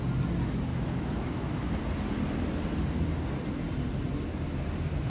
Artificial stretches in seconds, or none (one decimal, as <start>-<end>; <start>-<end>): 0.7-1.8